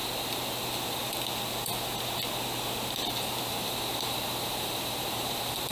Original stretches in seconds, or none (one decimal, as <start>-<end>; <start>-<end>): 0.0-3.4